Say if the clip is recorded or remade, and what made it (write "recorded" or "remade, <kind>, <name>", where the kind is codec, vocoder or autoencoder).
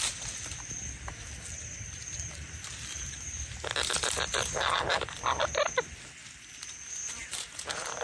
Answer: recorded